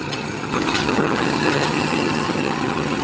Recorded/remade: remade